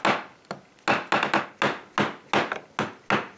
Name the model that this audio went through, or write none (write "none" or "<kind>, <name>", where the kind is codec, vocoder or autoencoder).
none